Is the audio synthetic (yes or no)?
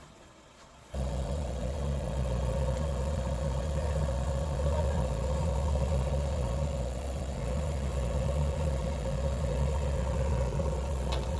yes